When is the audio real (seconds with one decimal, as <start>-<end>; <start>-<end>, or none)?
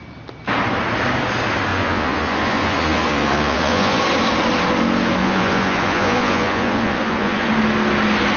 0.0-1.7; 4.0-5.2; 7.5-8.4